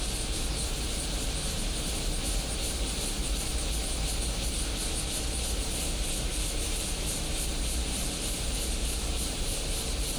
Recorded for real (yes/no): no